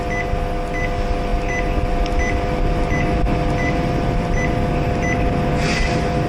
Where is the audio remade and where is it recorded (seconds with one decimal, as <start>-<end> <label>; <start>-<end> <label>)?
0.0-6.3 recorded